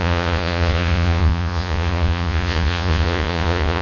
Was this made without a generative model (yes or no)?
no